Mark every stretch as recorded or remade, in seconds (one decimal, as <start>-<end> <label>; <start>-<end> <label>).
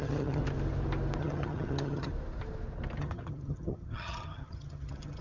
0.0-0.4 remade; 0.4-1.2 recorded; 1.2-2.1 remade; 2.1-3.0 recorded; 3.0-5.2 remade